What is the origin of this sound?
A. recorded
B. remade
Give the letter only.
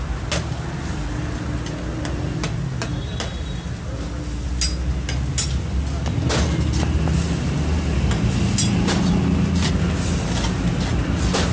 A